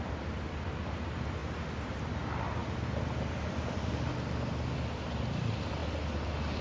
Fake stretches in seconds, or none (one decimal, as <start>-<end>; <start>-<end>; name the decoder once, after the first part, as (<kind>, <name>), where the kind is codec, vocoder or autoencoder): none